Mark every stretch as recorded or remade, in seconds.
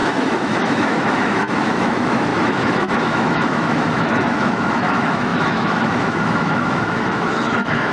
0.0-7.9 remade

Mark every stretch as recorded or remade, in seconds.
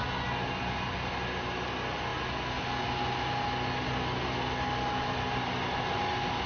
0.0-6.5 recorded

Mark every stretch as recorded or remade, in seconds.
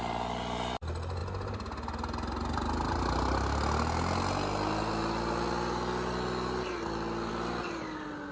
0.0-8.3 recorded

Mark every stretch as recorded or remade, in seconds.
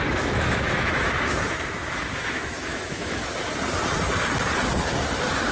0.0-3.3 remade; 3.3-5.5 recorded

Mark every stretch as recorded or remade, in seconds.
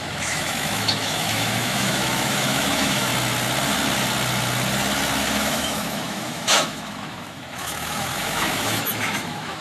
0.0-3.1 remade; 3.1-5.3 recorded; 5.3-9.6 remade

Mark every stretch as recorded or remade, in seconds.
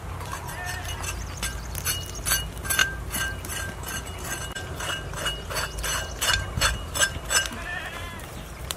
0.0-8.8 recorded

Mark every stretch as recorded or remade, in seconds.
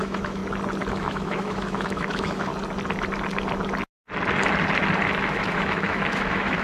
0.0-0.4 remade; 0.4-0.9 recorded; 0.9-2.5 remade; 2.5-5.2 recorded; 5.2-6.6 remade